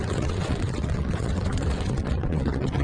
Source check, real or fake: fake